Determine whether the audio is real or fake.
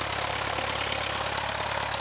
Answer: real